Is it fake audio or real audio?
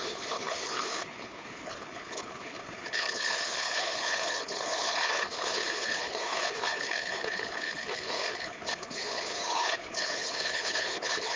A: fake